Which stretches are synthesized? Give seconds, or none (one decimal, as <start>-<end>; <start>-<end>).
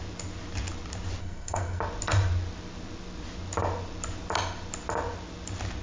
1.2-1.8